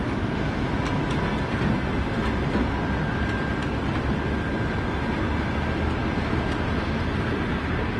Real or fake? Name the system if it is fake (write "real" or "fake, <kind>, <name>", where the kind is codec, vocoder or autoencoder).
real